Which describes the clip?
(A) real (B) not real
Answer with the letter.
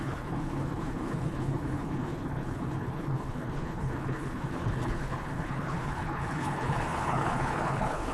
B